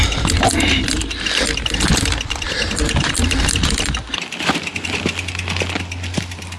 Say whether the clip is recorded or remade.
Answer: recorded